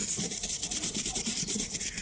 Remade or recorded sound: recorded